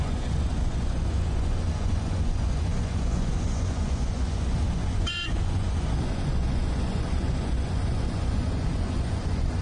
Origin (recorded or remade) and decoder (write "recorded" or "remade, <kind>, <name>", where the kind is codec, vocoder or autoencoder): remade, vocoder, Vocos